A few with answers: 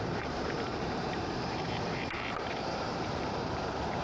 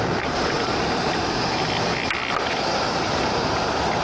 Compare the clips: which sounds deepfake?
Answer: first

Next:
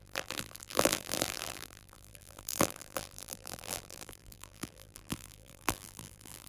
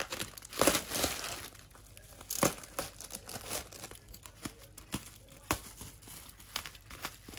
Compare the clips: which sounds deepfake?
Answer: first